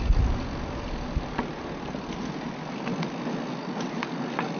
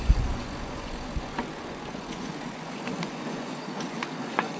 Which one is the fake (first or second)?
second